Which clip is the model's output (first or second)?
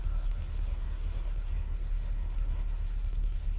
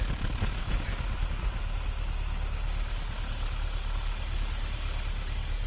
first